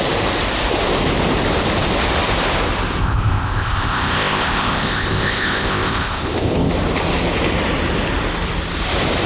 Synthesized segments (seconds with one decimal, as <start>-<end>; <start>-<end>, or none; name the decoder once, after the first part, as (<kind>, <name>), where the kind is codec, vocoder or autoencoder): 3.0-6.7 (codec, ZipCodec)